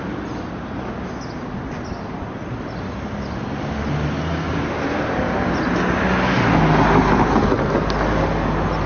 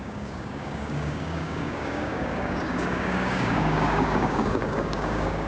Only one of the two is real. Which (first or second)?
first